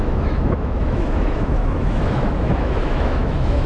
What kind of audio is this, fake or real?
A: fake